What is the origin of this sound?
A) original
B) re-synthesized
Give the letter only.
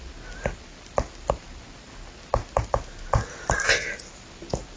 A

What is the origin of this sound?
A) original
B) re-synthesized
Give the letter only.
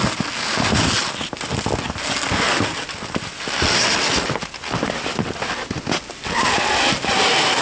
A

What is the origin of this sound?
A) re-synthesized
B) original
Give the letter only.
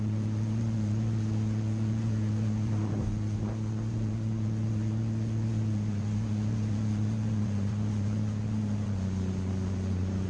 A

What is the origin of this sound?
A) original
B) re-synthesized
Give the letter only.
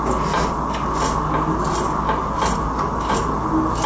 A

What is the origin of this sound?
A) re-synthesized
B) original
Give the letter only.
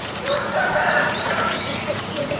A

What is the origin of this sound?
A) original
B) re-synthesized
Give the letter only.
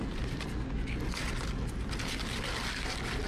A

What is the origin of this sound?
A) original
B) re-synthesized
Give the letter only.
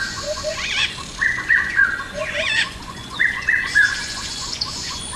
B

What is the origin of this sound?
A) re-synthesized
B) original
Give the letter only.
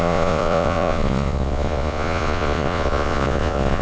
A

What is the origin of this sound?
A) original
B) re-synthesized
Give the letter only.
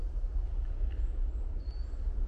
A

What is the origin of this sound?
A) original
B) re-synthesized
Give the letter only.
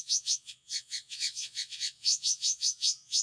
B